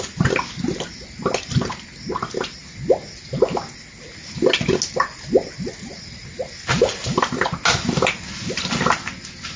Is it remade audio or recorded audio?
recorded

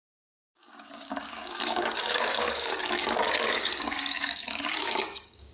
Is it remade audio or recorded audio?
remade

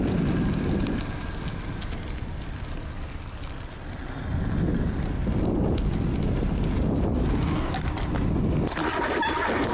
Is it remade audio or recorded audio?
recorded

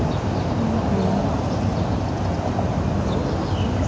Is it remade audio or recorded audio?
recorded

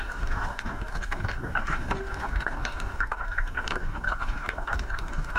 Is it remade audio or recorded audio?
remade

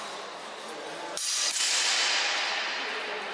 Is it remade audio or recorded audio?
recorded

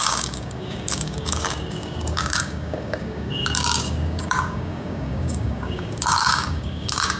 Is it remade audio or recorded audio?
remade